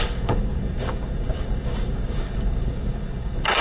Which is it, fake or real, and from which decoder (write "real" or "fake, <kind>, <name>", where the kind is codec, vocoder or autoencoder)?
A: fake, codec, DAC